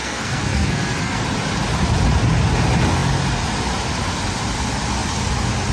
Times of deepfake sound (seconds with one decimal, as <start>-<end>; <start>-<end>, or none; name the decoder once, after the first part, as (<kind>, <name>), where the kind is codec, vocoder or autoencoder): 0.0-1.2 (codec, SNAC)